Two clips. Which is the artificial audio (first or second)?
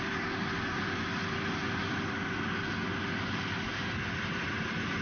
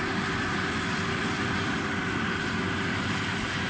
second